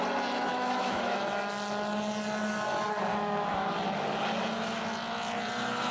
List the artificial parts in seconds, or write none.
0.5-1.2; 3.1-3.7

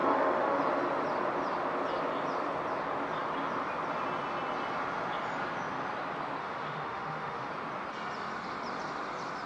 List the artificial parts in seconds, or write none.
0.0-0.6; 6.4-7.5

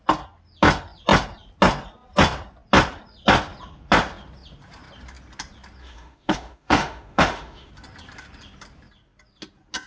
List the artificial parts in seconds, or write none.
5.8-7.7

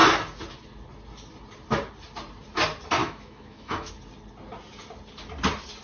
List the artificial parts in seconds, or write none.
3.0-3.9

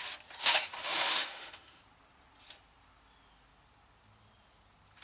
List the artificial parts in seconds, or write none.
0.4-1.8

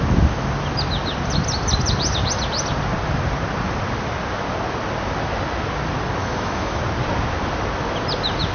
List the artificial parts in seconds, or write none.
6.2-6.8